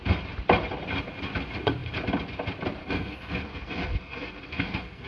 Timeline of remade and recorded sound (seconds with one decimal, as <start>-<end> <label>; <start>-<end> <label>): 0.0-2.8 recorded; 2.8-5.1 remade